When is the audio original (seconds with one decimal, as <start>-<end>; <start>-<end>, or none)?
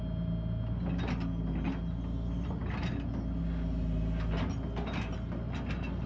0.0-6.1